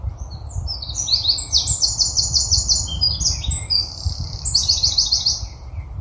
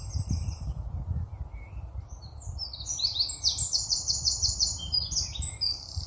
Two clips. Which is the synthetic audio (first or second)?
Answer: second